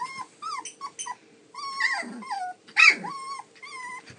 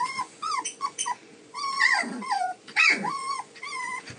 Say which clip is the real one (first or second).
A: first